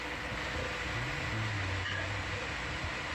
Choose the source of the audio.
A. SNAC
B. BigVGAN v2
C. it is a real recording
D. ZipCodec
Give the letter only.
C